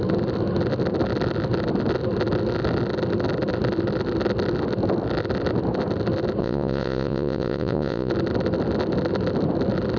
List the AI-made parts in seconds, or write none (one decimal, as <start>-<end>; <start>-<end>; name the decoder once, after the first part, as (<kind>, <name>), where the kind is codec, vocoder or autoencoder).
6.4-8.1 (vocoder, Vocos)